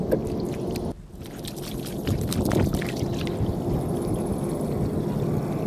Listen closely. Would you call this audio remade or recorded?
recorded